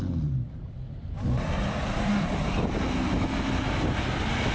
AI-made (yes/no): no